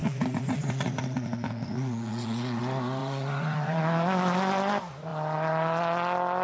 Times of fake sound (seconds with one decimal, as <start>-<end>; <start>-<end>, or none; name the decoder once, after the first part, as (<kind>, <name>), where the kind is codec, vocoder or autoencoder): 0.0-2.6 (vocoder, Vocos); 3.0-3.8